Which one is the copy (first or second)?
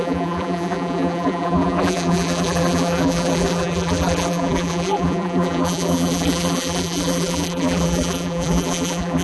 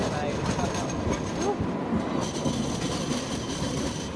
first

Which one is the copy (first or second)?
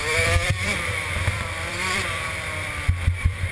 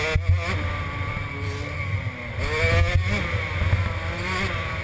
first